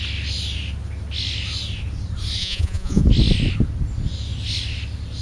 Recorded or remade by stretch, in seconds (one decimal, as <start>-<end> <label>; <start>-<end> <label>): 0.0-2.4 recorded; 2.4-3.0 remade; 3.0-5.2 recorded